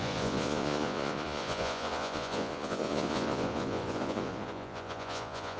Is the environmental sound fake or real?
fake